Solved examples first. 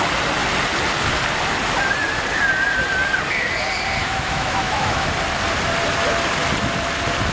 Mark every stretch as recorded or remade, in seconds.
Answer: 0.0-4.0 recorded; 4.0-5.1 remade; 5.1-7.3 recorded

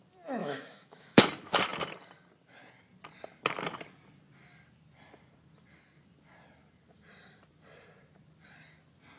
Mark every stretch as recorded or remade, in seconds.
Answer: 0.0-0.4 recorded; 0.4-1.2 remade; 1.2-9.2 recorded

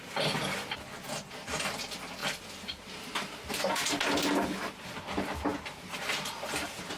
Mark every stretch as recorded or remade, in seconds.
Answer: 0.0-7.0 recorded

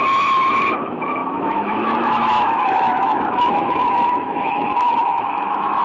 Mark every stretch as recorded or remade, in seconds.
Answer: 0.0-5.8 remade

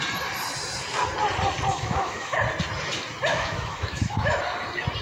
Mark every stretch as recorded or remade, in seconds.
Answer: 0.0-1.7 recorded; 1.7-2.4 remade; 2.4-3.3 recorded; 3.3-4.4 remade; 4.4-5.0 recorded

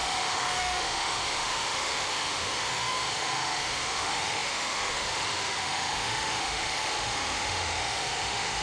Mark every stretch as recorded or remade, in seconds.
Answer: 0.0-8.6 remade

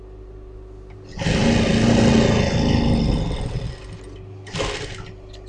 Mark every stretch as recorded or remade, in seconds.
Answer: 0.0-5.5 recorded

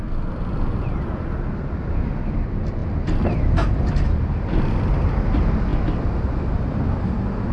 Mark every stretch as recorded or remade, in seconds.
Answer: 0.0-7.5 recorded